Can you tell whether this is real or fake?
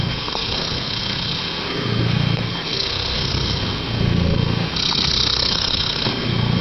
fake